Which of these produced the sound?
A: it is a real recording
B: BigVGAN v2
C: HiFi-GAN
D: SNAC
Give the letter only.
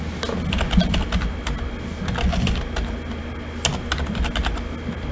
A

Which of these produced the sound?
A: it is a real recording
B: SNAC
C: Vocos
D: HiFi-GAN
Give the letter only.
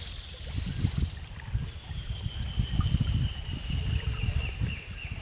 A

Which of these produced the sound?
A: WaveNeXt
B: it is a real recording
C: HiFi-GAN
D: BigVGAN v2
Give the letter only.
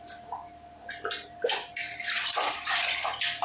B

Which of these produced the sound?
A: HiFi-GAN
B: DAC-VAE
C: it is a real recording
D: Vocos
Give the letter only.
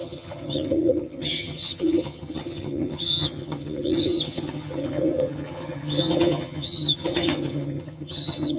A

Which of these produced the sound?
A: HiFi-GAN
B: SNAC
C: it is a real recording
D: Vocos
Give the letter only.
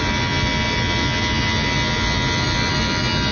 C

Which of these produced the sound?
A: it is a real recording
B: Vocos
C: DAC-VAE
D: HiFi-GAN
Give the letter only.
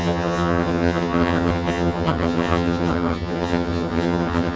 D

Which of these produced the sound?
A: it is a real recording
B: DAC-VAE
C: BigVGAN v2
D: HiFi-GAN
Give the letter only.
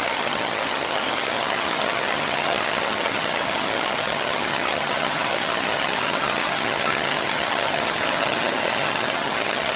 D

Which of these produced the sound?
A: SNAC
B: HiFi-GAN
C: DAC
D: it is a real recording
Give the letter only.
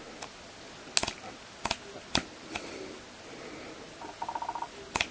D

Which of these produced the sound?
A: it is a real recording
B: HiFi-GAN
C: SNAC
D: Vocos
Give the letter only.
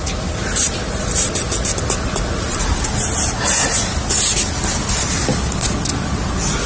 A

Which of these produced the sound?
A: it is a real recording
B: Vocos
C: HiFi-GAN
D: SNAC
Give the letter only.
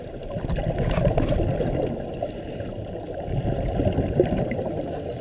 A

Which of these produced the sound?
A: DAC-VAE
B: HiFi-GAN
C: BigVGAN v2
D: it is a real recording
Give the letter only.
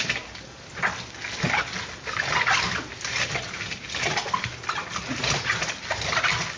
D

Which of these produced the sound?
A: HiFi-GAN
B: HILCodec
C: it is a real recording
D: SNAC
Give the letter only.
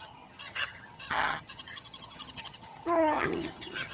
A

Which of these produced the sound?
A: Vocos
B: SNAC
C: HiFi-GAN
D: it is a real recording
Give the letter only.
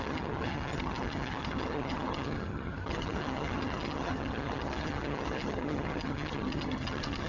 C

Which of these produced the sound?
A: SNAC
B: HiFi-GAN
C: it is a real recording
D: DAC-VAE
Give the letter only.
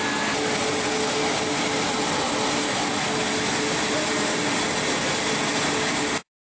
C